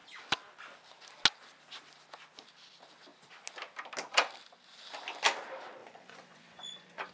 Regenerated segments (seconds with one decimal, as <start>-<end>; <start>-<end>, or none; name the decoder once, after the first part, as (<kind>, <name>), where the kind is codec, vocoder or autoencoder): 5.8-7.1 (vocoder, Vocos)